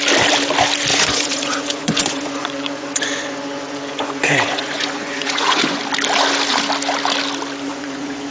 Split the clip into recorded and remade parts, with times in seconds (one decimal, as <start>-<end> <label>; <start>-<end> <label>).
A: 0.0-0.9 recorded; 0.9-5.8 remade; 5.8-7.7 recorded; 7.7-8.3 remade